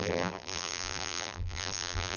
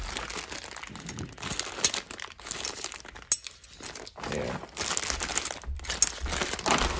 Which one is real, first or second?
second